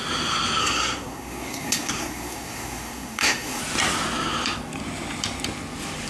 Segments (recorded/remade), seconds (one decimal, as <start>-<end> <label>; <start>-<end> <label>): 0.0-0.6 recorded; 0.6-3.6 remade; 3.6-6.1 recorded

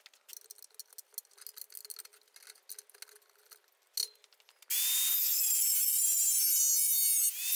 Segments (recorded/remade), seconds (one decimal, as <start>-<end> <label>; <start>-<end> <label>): 0.0-7.6 recorded